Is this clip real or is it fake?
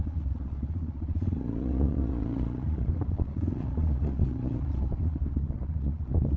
fake